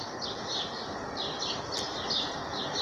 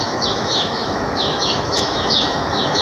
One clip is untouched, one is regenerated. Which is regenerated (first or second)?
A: second